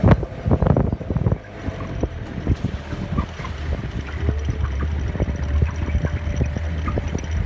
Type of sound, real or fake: real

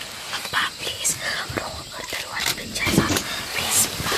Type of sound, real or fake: real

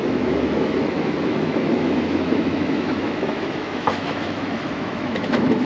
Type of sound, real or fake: fake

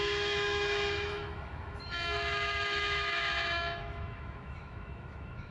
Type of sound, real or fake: fake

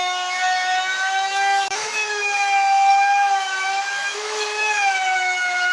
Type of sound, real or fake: fake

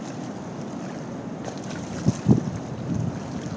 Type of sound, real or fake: real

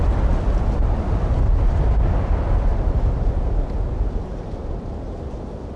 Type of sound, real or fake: real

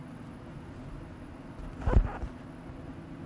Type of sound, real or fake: real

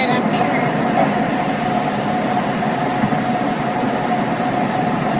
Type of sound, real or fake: real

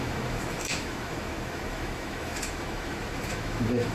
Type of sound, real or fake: fake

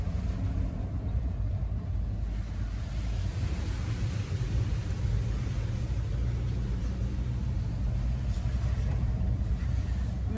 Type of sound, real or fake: real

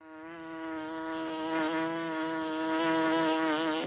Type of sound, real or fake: fake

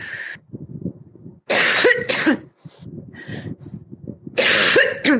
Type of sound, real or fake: real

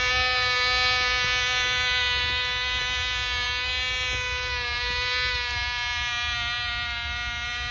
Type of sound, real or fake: real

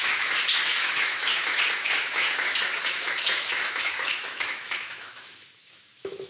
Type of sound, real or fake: fake